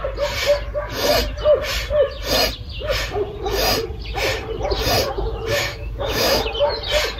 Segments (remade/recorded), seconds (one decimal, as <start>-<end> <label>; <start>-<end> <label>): 0.0-5.5 recorded; 5.5-6.5 remade; 6.5-7.2 recorded